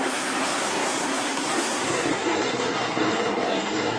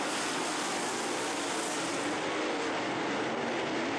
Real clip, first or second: second